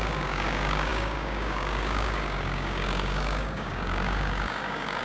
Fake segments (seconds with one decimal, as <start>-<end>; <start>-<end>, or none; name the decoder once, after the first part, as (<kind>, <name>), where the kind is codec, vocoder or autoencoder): 0.0-5.0 (codec, DAC)